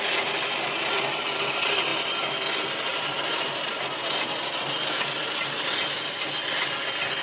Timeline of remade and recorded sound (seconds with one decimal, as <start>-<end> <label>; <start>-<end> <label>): 0.0-2.9 recorded; 2.9-3.7 remade; 3.7-7.2 recorded

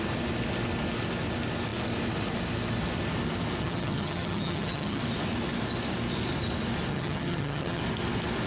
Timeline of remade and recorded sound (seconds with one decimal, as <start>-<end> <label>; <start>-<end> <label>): 0.0-3.6 recorded; 3.6-5.0 remade; 5.0-6.9 recorded; 6.9-7.8 remade; 7.8-8.5 recorded

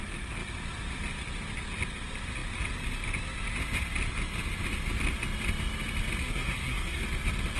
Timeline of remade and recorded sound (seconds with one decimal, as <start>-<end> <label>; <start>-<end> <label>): 0.0-6.2 recorded; 6.2-7.0 remade; 7.0-7.6 recorded